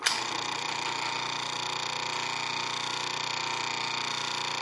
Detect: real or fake real